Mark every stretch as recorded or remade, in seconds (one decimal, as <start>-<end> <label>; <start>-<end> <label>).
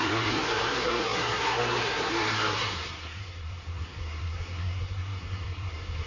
0.0-6.1 remade